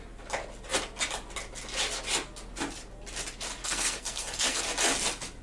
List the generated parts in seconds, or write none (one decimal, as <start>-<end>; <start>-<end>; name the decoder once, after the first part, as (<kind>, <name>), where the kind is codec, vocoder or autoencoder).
3.6-4.6 (codec, SNAC)